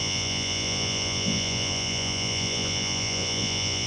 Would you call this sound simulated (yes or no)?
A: yes